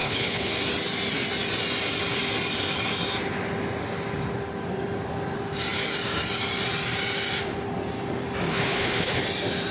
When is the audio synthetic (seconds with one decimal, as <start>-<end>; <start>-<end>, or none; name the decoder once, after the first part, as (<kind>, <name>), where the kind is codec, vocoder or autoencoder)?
0.0-0.5 (codec, HILCodec); 8.5-9.2